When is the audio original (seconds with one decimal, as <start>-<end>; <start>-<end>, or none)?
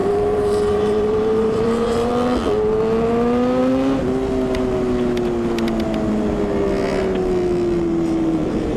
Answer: 2.1-7.9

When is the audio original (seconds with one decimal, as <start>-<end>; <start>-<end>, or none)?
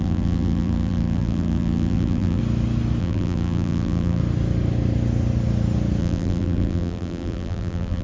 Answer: 2.4-3.0; 4.2-6.0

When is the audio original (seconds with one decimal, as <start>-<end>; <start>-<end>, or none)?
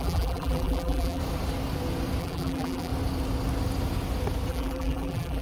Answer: 1.2-2.2; 2.9-4.5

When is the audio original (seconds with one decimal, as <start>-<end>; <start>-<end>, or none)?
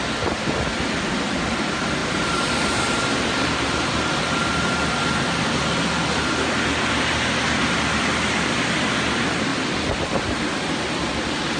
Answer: 0.0-2.0; 4.9-11.6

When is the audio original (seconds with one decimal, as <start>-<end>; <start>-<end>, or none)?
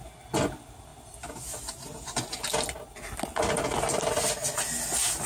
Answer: 0.0-5.3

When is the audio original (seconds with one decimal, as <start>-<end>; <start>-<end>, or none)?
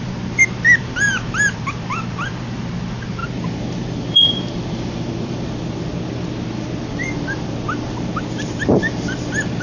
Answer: 5.9-6.9